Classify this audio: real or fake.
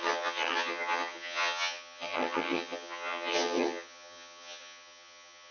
fake